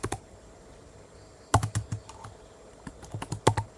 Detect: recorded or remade recorded